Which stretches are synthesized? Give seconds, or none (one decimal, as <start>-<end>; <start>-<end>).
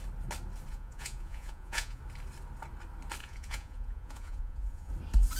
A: 0.7-2.0; 3.2-4.9